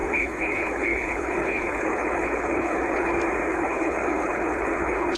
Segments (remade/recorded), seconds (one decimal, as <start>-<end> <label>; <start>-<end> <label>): 0.0-3.1 remade; 3.1-3.5 recorded; 3.5-5.2 remade